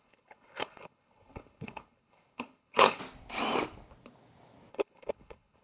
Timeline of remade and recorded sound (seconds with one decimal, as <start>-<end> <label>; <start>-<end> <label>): 0.0-3.0 remade; 3.0-4.7 recorded; 4.7-5.6 remade